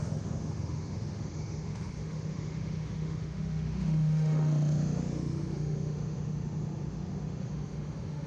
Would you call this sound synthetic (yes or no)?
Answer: yes